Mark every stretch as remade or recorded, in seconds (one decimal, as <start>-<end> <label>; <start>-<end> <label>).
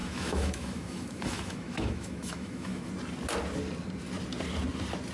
0.0-2.9 remade; 2.9-5.1 recorded